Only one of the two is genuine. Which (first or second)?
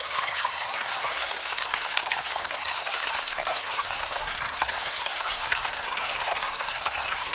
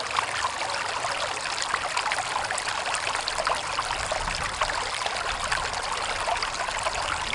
second